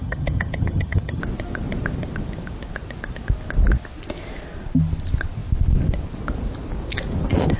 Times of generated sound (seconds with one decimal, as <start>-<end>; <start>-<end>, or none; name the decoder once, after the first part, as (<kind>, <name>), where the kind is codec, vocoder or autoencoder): 0.0-1.2 (vocoder, HiFi-GAN)